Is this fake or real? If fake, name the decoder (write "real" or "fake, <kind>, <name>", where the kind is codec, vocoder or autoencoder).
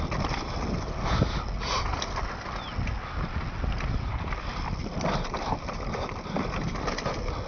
real